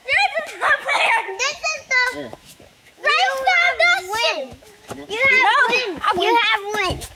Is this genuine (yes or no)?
no